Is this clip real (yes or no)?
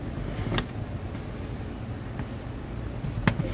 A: yes